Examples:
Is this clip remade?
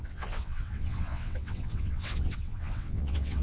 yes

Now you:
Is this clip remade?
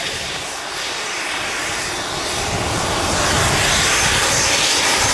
no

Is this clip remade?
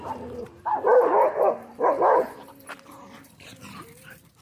no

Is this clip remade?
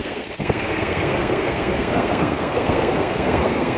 yes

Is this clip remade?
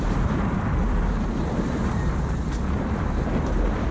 yes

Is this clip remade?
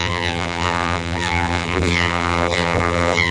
yes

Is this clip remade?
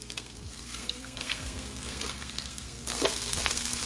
yes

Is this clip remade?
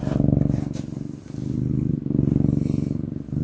no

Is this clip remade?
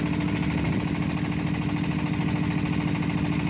no